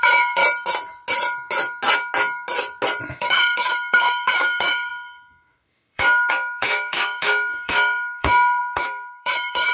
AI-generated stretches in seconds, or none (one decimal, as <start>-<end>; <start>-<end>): 0.0-0.4; 3.1-9.7